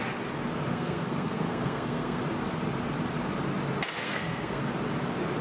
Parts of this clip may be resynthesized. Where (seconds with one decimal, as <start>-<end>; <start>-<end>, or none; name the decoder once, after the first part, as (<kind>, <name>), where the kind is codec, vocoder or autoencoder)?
0.7-2.2 (codec, SNAC); 4.0-4.6